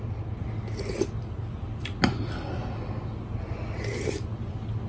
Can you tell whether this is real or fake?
real